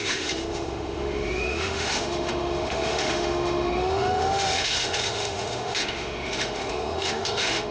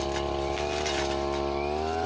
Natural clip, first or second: second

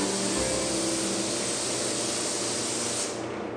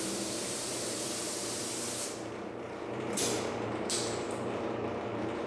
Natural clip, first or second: first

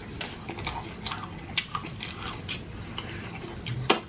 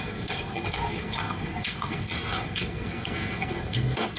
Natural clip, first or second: first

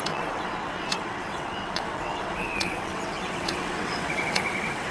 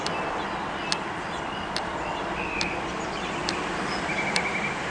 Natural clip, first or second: second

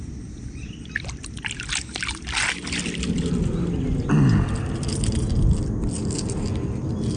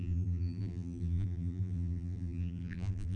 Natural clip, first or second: first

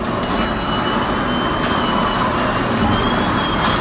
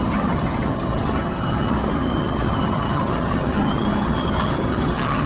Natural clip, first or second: first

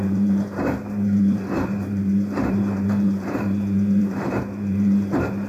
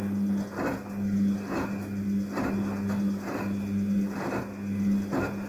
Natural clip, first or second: second